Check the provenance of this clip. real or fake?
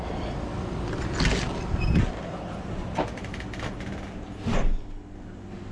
real